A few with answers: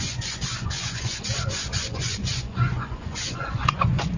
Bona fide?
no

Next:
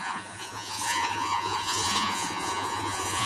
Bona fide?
no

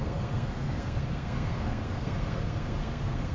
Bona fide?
no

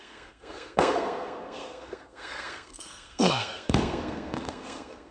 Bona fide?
no